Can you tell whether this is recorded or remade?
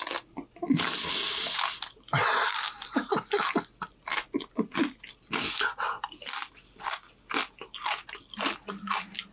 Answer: recorded